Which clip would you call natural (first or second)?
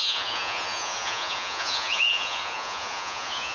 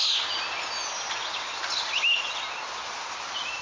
second